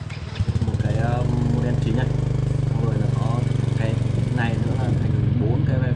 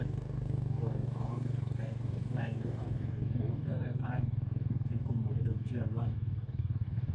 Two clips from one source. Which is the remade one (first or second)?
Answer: second